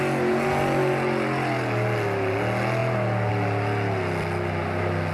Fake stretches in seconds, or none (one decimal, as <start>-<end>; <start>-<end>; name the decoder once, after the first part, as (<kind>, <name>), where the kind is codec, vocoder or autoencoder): none